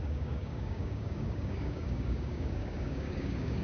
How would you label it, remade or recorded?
remade